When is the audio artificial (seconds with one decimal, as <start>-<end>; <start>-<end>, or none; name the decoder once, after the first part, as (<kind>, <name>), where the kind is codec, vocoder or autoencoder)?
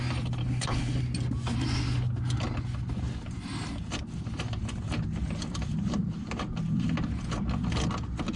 0.4-1.0 (codec, HILCodec)